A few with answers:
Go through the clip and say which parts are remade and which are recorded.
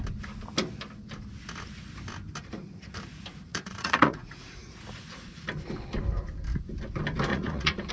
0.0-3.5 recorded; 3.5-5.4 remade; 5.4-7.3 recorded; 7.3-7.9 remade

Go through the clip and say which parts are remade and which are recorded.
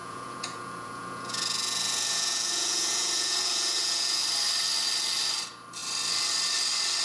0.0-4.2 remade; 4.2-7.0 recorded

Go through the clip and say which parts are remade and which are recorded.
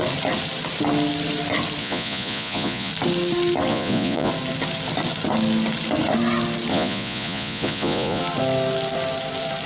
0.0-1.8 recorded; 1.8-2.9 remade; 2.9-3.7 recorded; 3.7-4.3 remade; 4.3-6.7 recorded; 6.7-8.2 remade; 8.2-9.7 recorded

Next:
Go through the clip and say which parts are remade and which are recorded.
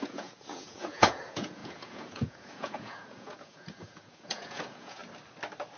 0.0-5.0 remade; 5.0-5.8 recorded